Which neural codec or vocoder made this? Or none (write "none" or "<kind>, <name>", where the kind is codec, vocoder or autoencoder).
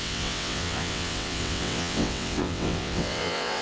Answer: vocoder, WaveNeXt